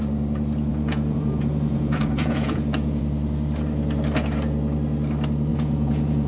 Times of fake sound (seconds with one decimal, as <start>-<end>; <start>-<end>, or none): 0.7-3.0; 5.5-6.3